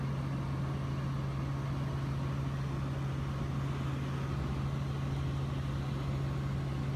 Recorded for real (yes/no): yes